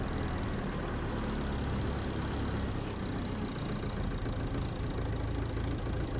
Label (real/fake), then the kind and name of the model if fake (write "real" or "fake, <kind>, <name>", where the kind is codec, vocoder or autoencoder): real